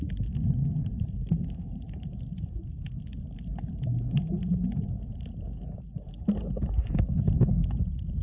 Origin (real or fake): real